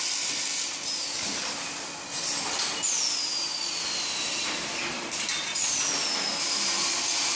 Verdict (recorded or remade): recorded